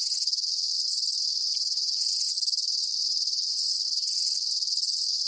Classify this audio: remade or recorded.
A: recorded